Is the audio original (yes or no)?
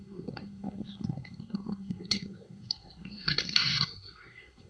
no